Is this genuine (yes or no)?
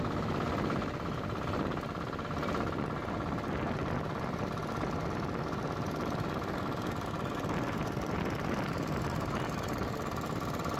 yes